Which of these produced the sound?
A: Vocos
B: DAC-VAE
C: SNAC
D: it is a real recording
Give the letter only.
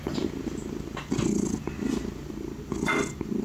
D